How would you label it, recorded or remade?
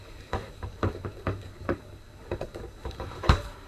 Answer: remade